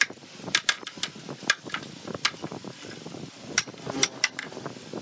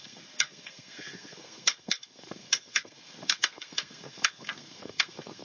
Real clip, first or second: first